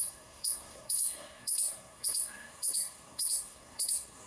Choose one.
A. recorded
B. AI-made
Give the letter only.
B